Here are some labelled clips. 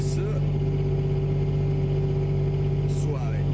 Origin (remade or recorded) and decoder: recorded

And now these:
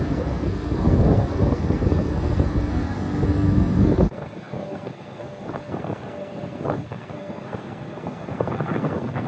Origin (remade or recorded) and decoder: remade, codec, SNAC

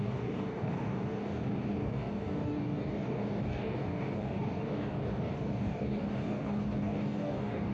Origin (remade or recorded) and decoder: remade, codec, DAC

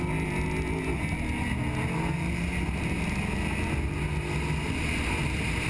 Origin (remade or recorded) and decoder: recorded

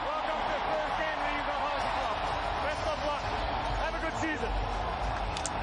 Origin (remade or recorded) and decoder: recorded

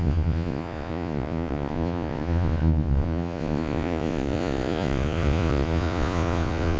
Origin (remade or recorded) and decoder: remade, vocoder, Vocos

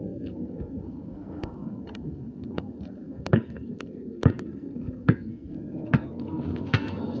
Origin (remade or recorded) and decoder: remade, codec, SNAC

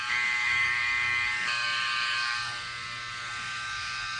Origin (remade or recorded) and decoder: remade, codec, DAC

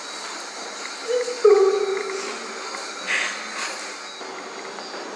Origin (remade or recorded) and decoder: recorded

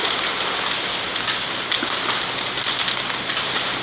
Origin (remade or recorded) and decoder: recorded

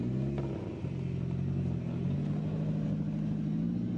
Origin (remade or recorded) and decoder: recorded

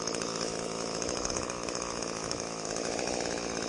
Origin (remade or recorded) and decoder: remade, autoencoder, DAC-VAE